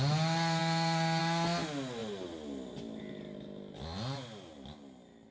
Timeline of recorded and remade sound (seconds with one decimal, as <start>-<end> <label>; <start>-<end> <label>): 0.0-5.3 recorded